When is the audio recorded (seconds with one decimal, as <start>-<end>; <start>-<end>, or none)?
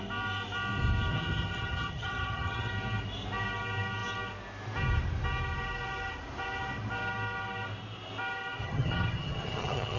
0.0-1.1; 2.7-8.6